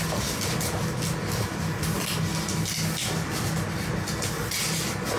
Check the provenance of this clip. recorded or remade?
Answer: recorded